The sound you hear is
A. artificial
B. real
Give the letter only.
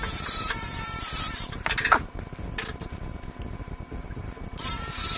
A